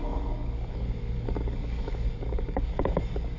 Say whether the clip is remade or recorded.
remade